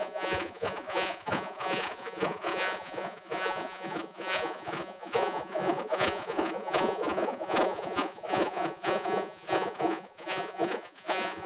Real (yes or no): no